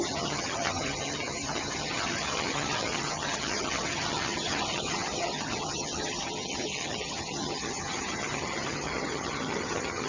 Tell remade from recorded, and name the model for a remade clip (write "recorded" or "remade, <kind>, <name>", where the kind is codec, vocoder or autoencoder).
remade, vocoder, HiFi-GAN